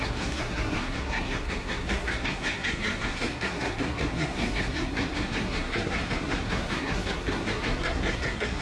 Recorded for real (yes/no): no